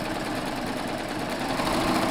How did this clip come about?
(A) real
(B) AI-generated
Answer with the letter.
B